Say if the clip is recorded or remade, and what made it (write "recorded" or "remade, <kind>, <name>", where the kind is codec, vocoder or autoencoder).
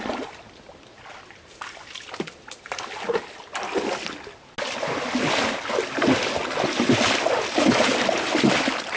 recorded